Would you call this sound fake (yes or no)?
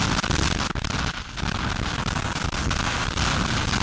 no